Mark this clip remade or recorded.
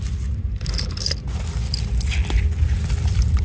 recorded